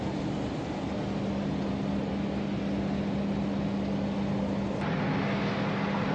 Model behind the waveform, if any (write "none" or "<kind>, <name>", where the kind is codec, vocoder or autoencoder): none